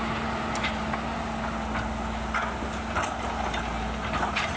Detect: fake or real real